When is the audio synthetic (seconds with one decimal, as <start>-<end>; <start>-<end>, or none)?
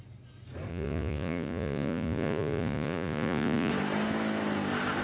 0.7-3.7